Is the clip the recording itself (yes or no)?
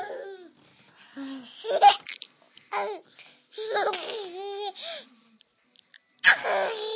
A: yes